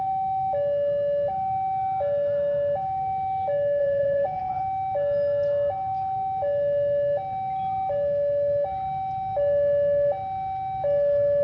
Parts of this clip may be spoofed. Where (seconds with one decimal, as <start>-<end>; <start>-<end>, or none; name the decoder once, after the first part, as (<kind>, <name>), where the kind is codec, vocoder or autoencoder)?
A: 3.8-4.6 (vocoder, Vocos)